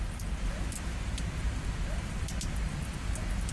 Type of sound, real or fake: real